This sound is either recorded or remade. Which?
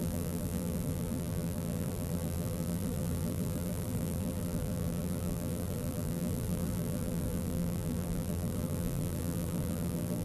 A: remade